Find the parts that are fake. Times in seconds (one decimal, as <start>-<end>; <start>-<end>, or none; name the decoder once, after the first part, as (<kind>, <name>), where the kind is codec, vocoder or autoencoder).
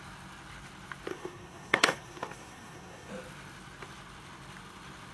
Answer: 1.1-3.1 (codec, SNAC)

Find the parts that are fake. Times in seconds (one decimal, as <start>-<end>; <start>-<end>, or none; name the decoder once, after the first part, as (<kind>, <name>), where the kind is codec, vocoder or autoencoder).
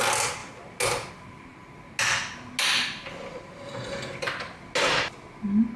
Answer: none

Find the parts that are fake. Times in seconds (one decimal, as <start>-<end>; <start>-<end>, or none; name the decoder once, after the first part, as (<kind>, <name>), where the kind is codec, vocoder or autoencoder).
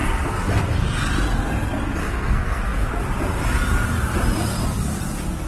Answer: 2.0-2.9 (codec, SNAC)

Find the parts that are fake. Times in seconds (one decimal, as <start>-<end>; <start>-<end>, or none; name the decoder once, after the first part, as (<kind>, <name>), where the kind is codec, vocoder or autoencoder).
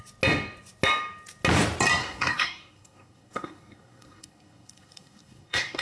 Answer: 2.0-5.8 (codec, SNAC)